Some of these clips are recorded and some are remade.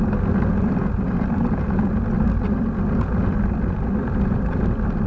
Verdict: recorded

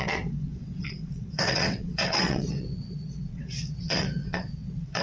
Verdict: remade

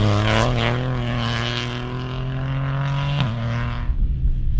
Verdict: recorded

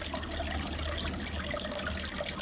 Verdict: recorded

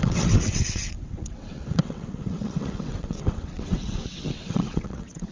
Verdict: remade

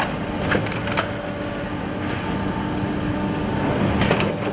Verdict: recorded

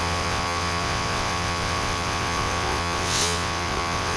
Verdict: remade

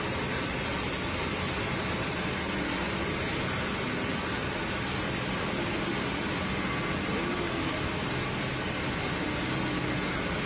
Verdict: recorded